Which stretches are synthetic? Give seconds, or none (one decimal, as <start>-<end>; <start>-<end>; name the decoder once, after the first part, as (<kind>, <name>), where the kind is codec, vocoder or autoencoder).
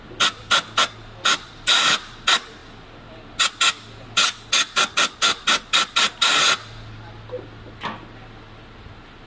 none